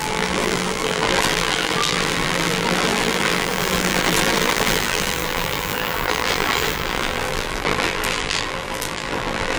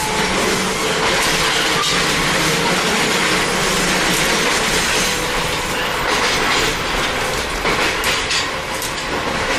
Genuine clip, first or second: second